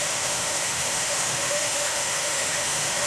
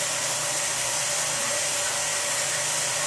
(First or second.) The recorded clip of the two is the second